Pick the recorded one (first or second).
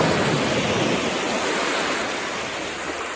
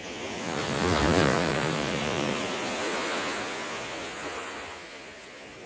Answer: first